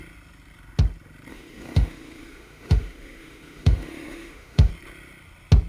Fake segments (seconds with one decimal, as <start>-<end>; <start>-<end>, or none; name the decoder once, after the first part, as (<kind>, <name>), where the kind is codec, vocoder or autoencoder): 1.3-4.7 (autoencoder, DAC-VAE)